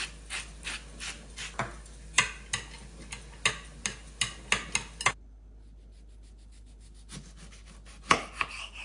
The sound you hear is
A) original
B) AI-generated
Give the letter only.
A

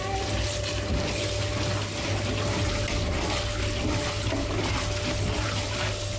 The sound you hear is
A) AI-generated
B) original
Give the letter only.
B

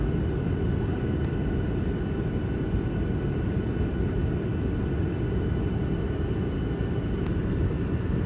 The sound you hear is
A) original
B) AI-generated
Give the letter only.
A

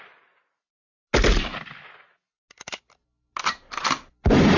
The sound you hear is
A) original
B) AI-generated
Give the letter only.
A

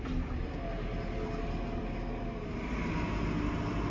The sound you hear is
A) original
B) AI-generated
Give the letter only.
A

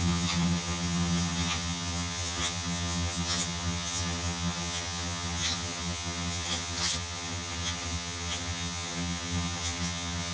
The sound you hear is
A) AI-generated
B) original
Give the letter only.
A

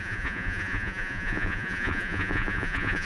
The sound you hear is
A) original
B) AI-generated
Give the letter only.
B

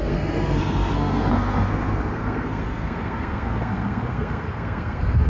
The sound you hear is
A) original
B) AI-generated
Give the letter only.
B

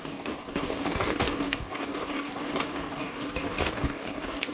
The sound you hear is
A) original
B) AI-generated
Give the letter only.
B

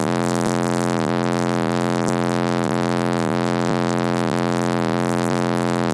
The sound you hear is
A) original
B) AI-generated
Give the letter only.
A